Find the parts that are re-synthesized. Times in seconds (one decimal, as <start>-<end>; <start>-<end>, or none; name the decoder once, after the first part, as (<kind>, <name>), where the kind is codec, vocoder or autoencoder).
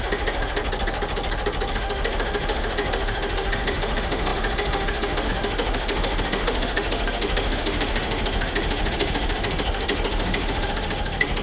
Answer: 0.0-0.6 (autoencoder, DAC-VAE); 1.7-11.4